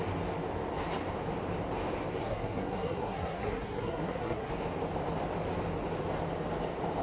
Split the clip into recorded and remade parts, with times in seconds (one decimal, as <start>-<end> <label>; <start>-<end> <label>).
0.0-2.2 recorded; 2.2-4.5 remade; 4.5-7.0 recorded